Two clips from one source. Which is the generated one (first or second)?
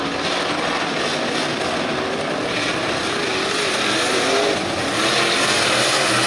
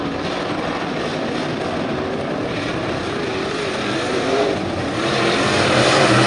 second